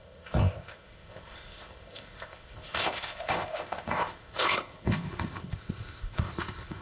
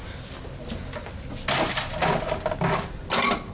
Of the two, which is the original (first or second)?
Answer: second